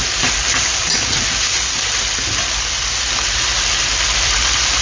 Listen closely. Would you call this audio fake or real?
real